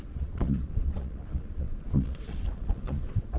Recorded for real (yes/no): no